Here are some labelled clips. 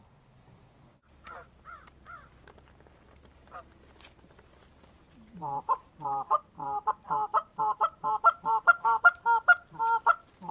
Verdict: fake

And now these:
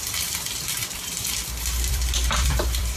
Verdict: fake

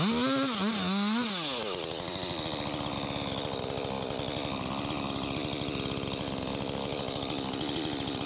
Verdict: real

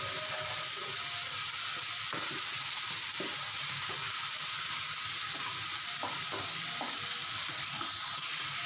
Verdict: real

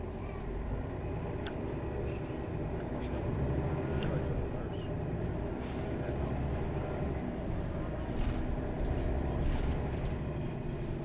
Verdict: fake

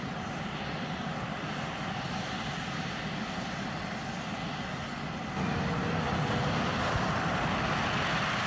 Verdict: real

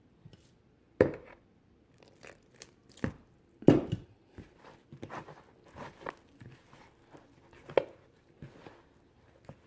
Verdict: real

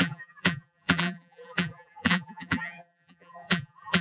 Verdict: fake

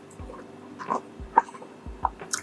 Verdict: fake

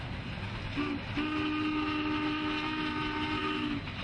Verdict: real